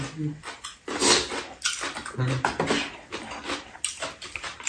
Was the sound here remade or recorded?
recorded